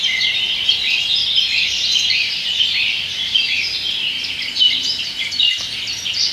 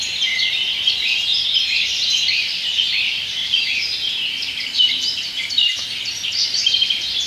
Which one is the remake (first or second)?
second